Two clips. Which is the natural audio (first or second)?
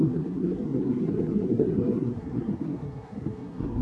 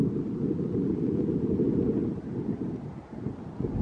second